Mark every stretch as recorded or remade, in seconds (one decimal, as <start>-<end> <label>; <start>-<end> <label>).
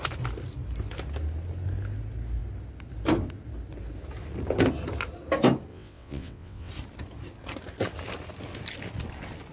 0.0-5.7 recorded; 5.7-6.7 remade; 6.7-9.5 recorded